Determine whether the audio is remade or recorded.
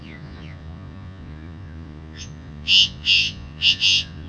remade